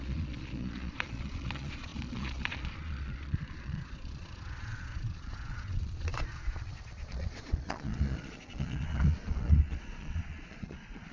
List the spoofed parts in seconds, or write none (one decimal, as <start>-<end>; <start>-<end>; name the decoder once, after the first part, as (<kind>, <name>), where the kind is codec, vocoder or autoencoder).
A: 0.0-11.1 (vocoder, Vocos)